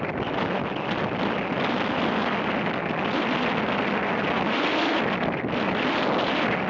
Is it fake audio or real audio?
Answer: real